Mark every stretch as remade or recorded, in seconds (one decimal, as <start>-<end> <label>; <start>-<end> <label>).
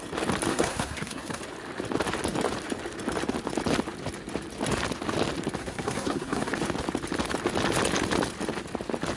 0.0-0.5 recorded; 0.5-1.4 remade; 1.4-5.6 recorded; 5.6-6.5 remade; 6.5-9.2 recorded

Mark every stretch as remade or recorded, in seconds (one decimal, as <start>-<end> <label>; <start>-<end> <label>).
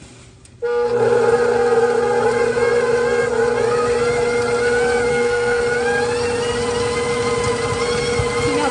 0.0-5.1 recorded; 5.1-5.6 remade; 5.6-8.7 recorded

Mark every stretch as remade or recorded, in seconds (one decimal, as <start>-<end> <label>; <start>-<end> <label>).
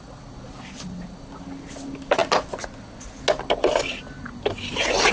0.0-5.1 recorded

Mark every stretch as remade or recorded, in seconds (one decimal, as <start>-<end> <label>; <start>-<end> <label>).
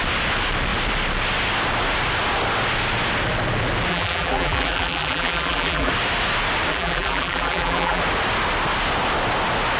0.0-3.9 recorded; 3.9-5.9 remade; 5.9-6.7 recorded; 6.7-8.0 remade; 8.0-9.8 recorded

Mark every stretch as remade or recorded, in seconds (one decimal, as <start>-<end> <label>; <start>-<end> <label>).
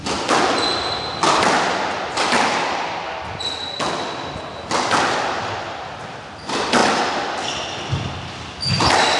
0.0-9.2 recorded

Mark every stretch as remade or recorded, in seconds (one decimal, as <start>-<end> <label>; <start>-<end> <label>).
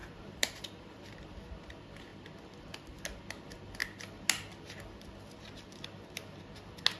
0.0-1.2 remade; 1.2-7.0 recorded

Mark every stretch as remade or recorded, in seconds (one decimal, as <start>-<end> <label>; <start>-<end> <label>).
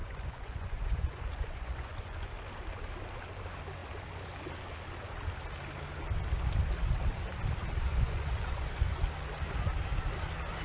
0.0-2.3 remade; 2.3-7.9 recorded; 7.9-9.0 remade; 9.0-10.6 recorded